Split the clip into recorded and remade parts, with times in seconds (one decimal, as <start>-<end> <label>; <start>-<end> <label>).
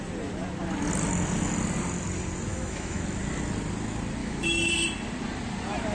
0.0-2.5 recorded; 2.5-3.0 remade; 3.0-4.2 recorded; 4.2-4.7 remade; 4.7-5.9 recorded